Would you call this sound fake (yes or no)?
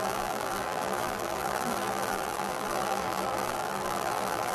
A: yes